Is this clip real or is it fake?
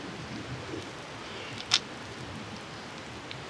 real